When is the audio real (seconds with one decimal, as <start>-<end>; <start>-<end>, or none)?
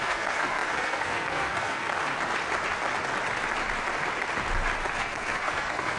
1.9-4.9